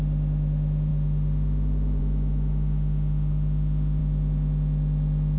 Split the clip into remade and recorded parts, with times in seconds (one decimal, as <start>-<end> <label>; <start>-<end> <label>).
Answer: 0.0-5.4 remade